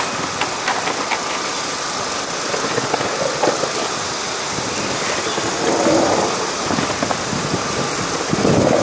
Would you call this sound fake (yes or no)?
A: no